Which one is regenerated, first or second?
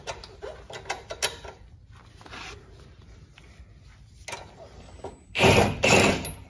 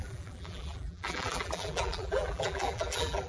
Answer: second